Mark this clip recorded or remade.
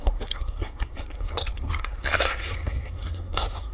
remade